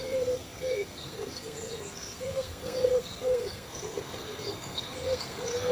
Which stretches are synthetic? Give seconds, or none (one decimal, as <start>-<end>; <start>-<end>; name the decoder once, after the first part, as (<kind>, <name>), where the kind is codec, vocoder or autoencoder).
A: 0.0-5.7 (codec, SNAC)